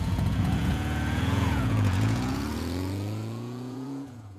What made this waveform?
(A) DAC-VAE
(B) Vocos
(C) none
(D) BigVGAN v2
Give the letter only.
B